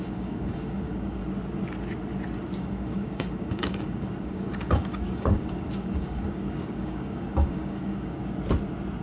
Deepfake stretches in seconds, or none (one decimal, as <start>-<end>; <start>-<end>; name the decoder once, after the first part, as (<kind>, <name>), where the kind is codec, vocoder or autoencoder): 0.0-1.2 (codec, DAC); 2.6-8.2